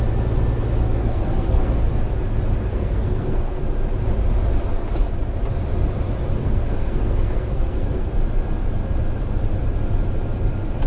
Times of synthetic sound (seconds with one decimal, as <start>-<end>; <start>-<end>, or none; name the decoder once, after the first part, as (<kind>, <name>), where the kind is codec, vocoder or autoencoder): 1.0-1.8 (codec, SNAC); 2.7-3.6; 6.4-8.1